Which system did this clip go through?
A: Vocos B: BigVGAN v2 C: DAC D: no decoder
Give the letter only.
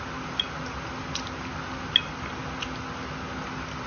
D